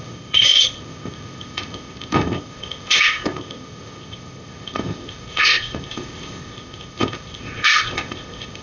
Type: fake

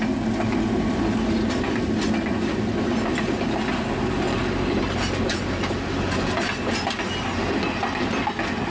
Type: real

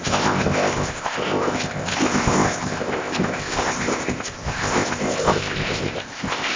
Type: fake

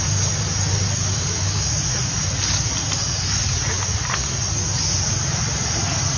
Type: real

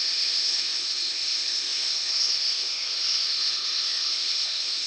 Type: fake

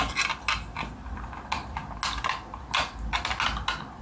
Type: real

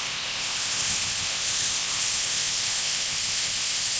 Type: fake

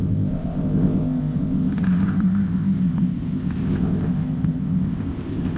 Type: fake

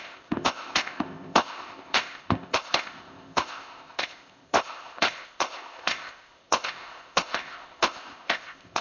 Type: fake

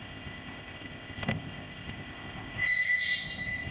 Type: fake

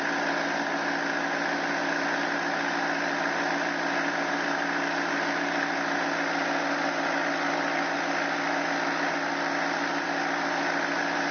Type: real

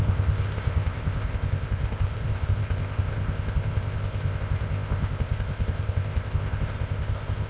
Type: fake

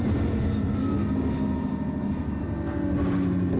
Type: real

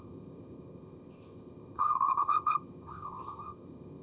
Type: fake